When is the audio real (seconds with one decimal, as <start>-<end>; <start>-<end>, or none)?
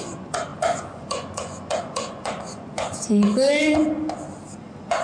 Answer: 3.8-4.6